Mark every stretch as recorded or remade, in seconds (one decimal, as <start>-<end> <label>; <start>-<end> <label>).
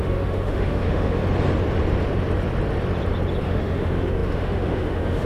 0.0-1.2 remade; 1.2-3.4 recorded; 3.4-5.3 remade